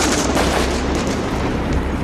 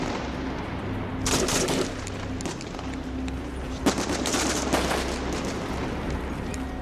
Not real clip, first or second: first